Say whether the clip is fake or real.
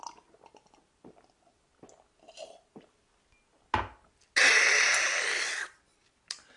real